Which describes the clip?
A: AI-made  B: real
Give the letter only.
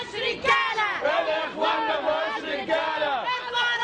B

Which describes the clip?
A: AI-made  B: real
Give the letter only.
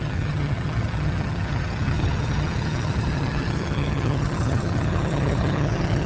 A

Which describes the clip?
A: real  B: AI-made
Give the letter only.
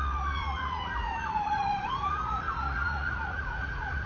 B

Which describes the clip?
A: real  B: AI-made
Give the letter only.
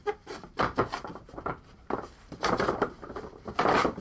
B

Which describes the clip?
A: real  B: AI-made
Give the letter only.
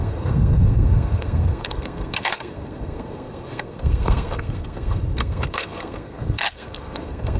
B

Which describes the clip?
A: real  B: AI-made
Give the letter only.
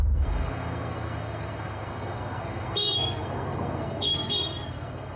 B